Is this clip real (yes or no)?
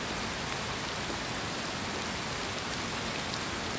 yes